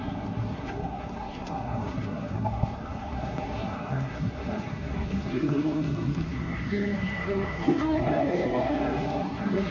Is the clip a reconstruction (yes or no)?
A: yes